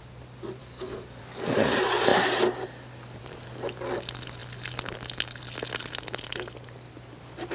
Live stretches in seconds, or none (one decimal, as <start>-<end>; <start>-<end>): 0.0-0.6; 1.2-7.5